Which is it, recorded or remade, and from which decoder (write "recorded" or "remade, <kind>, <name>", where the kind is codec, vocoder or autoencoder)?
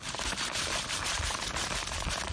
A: remade, vocoder, BigVGAN v2